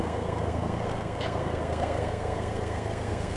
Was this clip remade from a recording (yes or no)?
yes